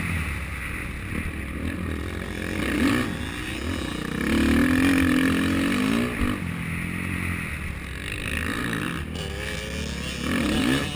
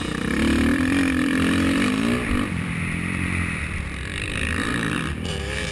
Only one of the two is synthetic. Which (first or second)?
second